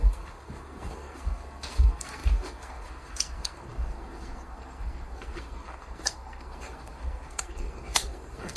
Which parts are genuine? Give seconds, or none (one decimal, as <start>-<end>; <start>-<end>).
none